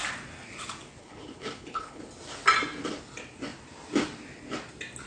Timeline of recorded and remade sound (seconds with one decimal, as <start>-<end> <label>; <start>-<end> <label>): 0.0-1.0 recorded; 1.0-2.0 remade; 2.0-5.1 recorded